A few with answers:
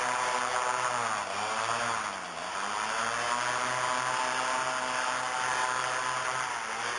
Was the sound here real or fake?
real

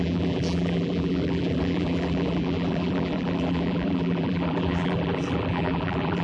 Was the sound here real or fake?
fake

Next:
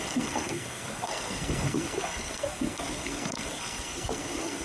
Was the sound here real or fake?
fake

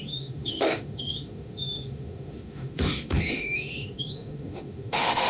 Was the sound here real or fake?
fake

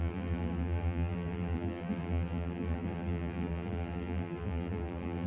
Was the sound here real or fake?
fake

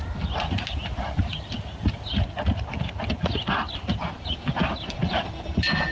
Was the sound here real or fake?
real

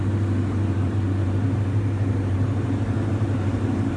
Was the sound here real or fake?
fake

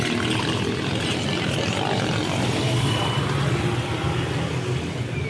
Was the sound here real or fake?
real